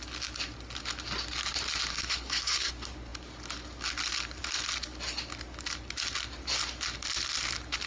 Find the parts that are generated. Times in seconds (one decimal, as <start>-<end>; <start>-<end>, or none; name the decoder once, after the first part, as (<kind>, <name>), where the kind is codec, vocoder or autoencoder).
1.9-2.7 (codec, SNAC)